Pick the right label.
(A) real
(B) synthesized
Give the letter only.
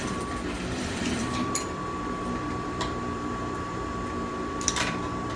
B